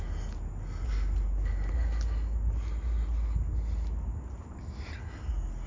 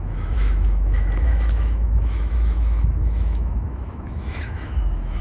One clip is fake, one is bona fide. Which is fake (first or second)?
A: second